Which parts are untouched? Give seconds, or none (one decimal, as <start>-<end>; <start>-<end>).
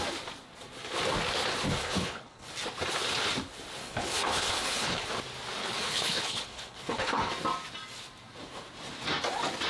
0.0-1.8; 2.5-3.8; 5.1-5.6; 7.3-9.7